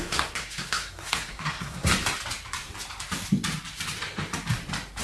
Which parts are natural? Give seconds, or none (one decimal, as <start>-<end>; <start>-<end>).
1.9-5.0